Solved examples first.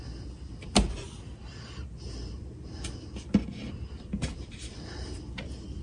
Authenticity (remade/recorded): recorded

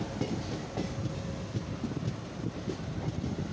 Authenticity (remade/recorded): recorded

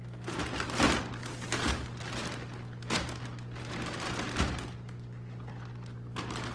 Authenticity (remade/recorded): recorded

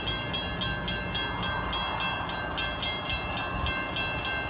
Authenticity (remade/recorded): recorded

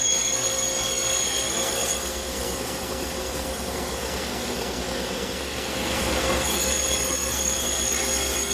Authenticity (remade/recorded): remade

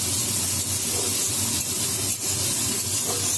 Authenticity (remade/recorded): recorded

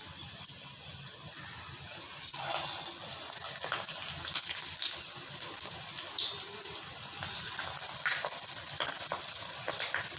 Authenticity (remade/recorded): recorded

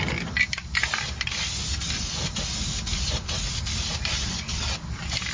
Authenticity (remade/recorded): recorded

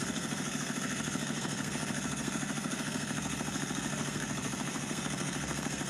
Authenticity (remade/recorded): remade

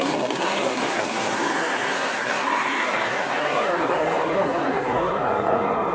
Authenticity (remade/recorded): remade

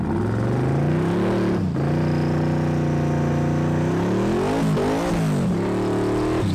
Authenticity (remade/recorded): recorded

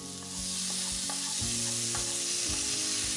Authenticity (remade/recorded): recorded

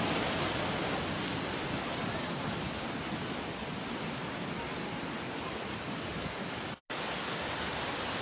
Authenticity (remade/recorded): recorded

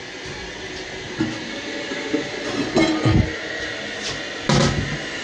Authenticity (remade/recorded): recorded